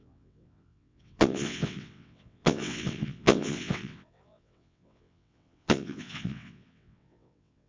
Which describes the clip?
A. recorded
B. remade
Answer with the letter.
B